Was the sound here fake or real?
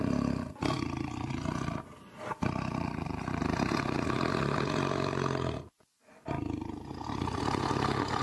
real